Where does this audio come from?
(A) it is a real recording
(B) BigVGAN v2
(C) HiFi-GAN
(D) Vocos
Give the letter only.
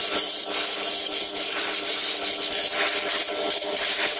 A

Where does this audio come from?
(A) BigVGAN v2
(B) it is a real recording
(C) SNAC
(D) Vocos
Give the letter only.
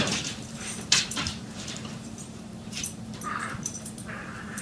A